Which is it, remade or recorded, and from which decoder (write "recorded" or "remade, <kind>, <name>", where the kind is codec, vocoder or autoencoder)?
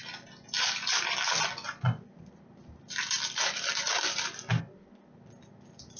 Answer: recorded